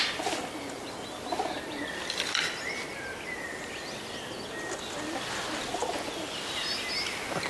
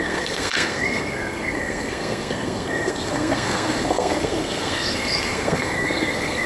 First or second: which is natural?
first